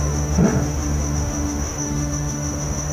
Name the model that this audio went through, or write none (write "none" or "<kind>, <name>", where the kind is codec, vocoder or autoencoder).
autoencoder, DAC-VAE